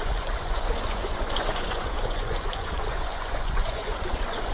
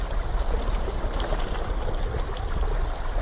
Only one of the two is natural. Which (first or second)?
second